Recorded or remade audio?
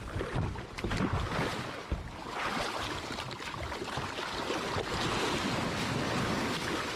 recorded